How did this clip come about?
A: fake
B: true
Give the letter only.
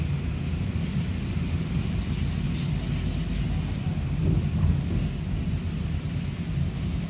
B